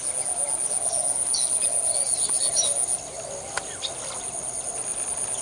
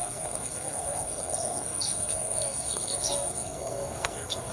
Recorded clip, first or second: first